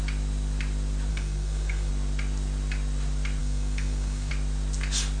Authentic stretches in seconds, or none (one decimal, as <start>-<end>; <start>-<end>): 0.0-1.1; 1.9-3.4; 4.3-5.2